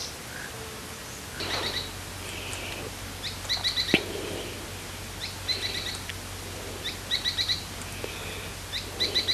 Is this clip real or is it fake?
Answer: real